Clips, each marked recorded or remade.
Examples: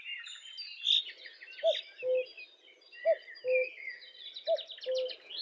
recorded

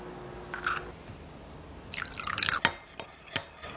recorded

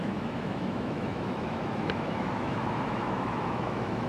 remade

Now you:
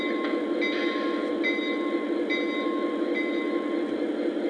recorded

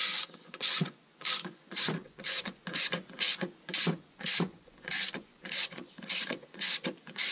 remade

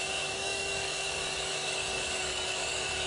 remade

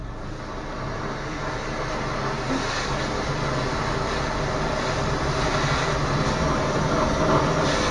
recorded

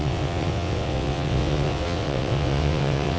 remade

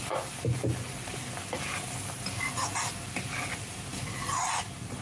recorded